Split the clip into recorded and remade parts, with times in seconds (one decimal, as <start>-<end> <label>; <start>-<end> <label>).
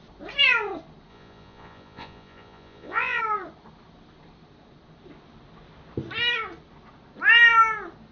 0.0-1.1 recorded; 1.1-3.2 remade; 3.2-8.1 recorded